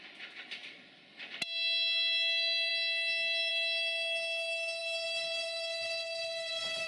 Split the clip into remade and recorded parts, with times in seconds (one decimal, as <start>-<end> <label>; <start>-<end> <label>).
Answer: 0.0-6.9 recorded